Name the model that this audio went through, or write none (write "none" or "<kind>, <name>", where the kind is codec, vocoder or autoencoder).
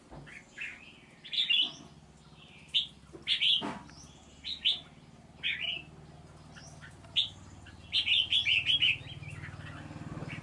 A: none